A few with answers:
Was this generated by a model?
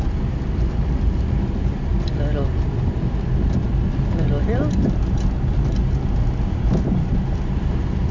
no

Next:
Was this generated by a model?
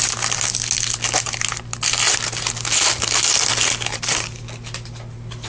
no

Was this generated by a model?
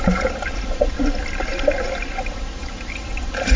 no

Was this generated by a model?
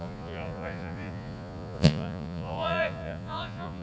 yes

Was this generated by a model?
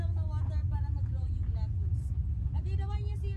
no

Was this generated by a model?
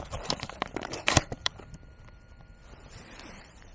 yes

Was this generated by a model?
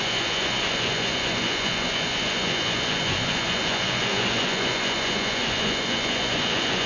yes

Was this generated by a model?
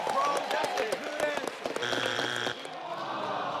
yes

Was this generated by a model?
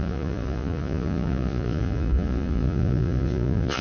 yes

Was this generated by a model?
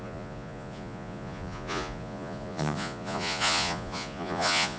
yes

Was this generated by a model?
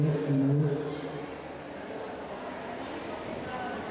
no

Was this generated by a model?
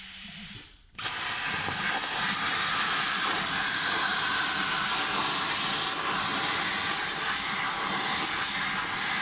no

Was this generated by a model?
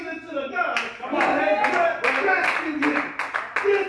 no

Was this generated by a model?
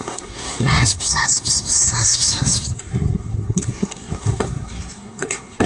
yes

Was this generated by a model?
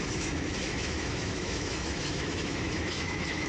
yes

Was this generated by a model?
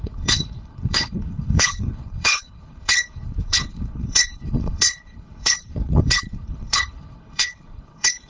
yes